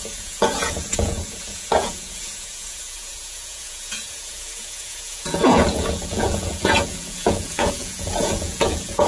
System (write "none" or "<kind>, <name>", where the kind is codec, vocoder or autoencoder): vocoder, Vocos